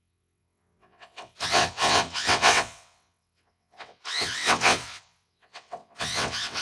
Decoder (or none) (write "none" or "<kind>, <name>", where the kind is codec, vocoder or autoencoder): vocoder, WaveNeXt